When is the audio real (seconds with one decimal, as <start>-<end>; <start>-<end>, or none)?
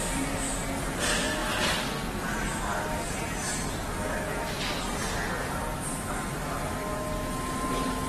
0.0-8.1